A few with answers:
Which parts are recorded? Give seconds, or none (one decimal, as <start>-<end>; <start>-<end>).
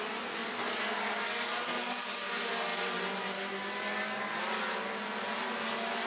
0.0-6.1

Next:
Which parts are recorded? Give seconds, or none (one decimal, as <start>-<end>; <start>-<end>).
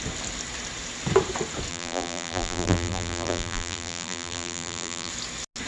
0.0-1.7; 5.1-5.7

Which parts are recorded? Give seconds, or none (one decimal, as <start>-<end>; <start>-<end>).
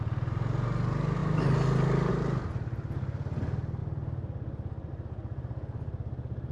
0.0-6.5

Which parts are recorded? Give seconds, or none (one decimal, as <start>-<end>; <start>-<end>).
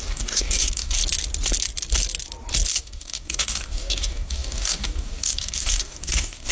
1.0-2.7